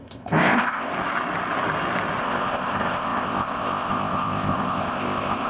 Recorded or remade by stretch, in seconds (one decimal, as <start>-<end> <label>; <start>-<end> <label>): 0.0-0.9 remade; 0.9-2.2 recorded; 2.2-5.5 remade